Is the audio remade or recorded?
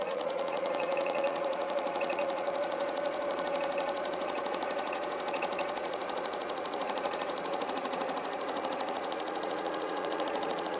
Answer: remade